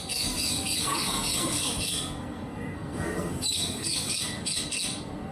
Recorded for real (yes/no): no